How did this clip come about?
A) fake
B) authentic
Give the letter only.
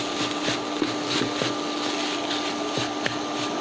B